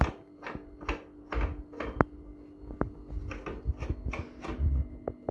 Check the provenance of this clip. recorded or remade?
recorded